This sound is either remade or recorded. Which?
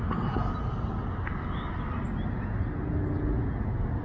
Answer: recorded